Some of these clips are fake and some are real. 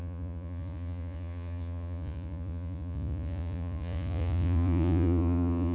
fake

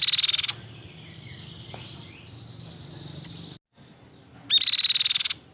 real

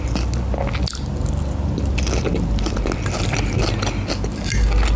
real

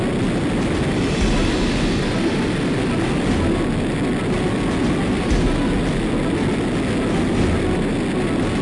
real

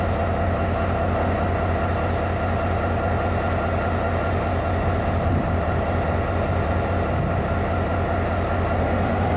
real